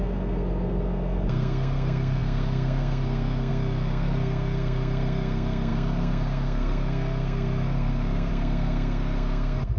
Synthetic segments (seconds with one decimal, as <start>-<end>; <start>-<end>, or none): 0.0-9.8